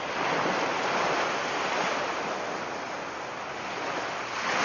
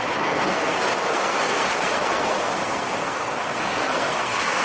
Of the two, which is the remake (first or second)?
second